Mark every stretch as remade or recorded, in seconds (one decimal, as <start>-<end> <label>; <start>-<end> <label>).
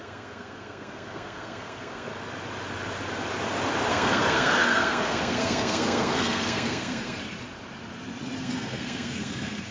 0.0-2.1 remade; 2.1-3.9 recorded; 3.9-7.2 remade; 7.2-8.4 recorded; 8.4-9.7 remade